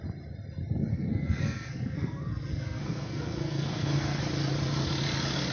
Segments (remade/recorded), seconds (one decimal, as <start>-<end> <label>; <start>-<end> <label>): 0.0-0.9 recorded; 0.9-4.2 remade; 4.2-5.5 recorded